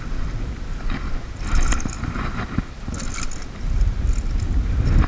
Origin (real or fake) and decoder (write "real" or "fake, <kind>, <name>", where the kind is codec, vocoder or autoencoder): real